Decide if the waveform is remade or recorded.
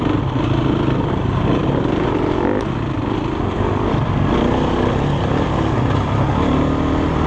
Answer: recorded